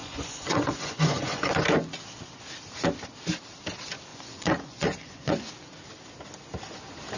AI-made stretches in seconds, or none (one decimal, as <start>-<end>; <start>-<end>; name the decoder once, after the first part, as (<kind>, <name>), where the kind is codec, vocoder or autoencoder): 0.0-1.6 (vocoder, Vocos); 4.1-5.5